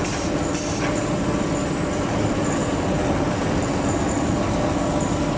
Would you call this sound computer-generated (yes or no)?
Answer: no